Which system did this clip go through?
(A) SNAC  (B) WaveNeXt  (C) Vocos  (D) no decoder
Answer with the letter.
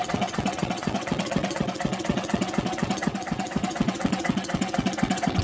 B